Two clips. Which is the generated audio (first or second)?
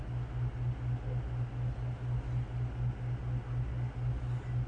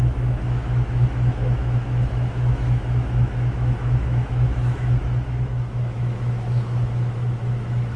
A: second